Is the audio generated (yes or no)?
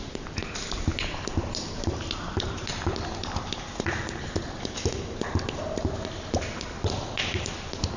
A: no